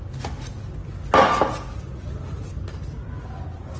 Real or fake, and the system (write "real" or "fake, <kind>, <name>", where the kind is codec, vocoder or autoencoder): real